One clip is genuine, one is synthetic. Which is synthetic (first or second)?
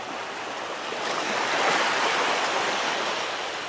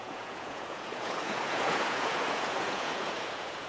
second